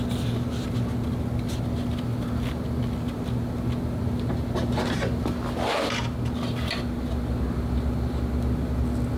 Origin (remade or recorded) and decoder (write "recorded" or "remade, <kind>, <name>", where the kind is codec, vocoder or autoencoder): recorded